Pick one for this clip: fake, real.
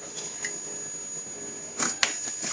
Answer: real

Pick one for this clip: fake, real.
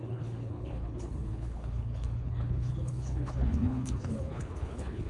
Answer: fake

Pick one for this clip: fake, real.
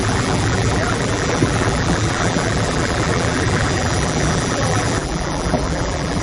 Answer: fake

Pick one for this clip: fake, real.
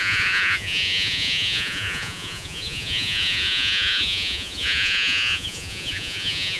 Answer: fake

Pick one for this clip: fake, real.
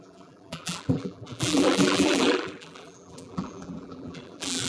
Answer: fake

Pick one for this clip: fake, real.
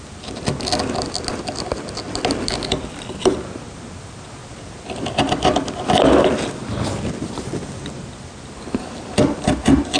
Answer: real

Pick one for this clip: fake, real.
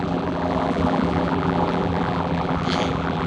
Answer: fake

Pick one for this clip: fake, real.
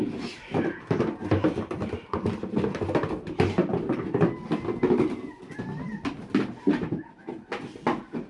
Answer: real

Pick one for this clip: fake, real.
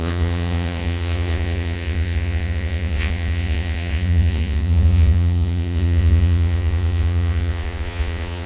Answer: fake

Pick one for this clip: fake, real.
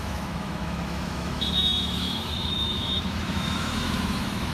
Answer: fake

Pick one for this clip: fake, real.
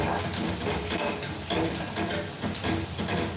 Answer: real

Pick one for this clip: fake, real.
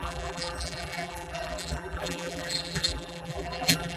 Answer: fake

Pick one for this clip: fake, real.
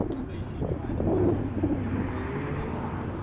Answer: real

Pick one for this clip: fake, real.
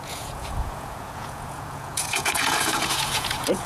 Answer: fake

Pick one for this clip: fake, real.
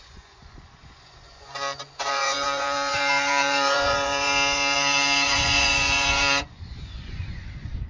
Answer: fake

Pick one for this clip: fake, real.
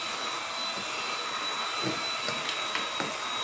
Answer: real